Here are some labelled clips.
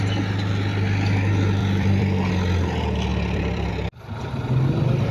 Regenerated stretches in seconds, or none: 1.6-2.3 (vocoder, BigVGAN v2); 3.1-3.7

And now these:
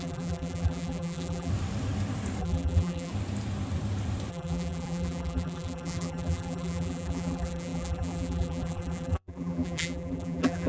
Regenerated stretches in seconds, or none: 0.0-1.5 (vocoder, BigVGAN v2); 2.4-3.1; 4.3-10.7

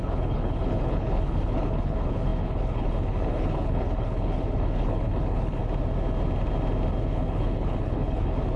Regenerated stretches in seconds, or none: 0.0-5.6 (codec, HILCodec); 7.0-8.6

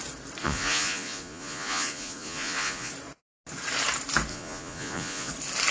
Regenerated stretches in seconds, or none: 0.4-2.9 (vocoder, Vocos); 4.3-5.3